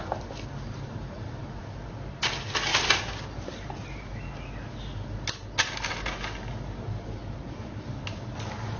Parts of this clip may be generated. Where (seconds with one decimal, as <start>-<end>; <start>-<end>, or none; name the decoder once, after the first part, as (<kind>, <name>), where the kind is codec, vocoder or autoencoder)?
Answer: 2.7-3.5 (vocoder, BigVGAN v2)